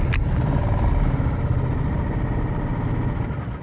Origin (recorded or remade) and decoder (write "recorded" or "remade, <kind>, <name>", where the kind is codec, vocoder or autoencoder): recorded